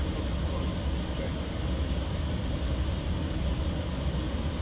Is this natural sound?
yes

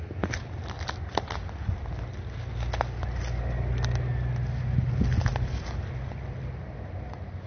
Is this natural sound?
yes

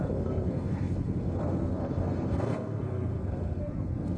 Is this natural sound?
no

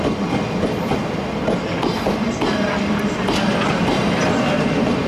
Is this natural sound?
yes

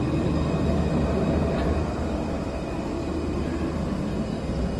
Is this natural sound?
yes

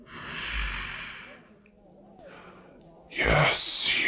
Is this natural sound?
yes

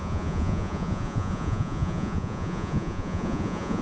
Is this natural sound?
no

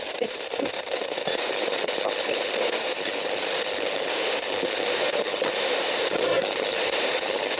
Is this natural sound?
no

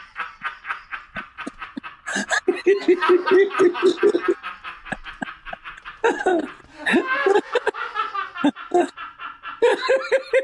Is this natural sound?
yes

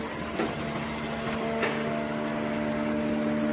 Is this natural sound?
yes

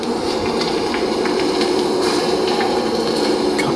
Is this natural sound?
no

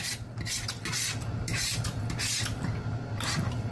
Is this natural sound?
yes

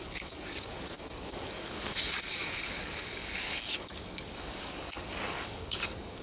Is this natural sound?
no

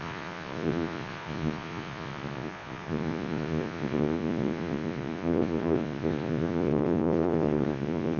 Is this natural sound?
no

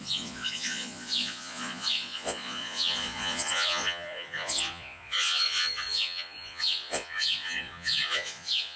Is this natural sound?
no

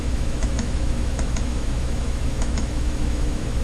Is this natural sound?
no